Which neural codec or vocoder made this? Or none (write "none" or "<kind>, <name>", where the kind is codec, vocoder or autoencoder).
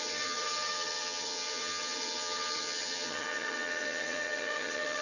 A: vocoder, HiFi-GAN